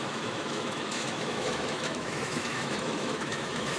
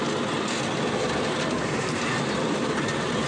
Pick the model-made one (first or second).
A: first